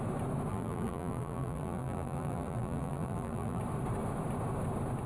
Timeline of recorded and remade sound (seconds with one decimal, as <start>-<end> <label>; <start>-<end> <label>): 0.0-0.5 recorded; 0.5-3.6 remade; 3.6-5.1 recorded